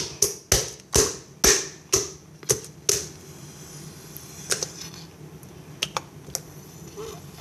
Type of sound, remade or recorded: recorded